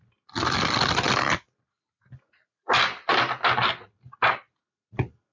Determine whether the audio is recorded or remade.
recorded